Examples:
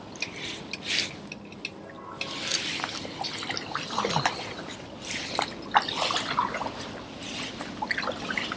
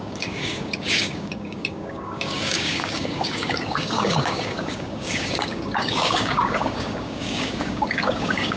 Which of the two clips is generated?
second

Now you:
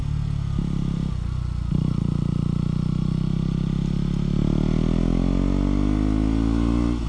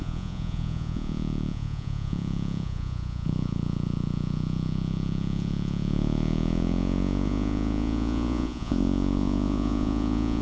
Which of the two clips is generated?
second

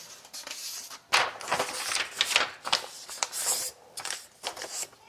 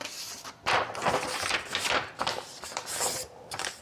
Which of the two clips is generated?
second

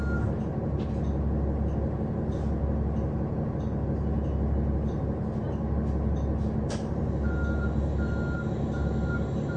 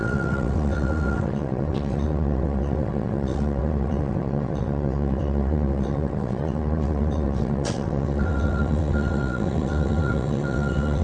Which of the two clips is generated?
second